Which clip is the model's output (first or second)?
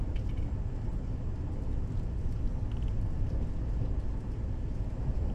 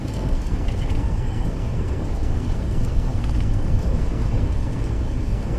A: second